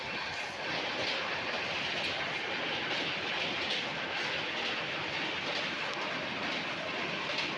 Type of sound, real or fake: real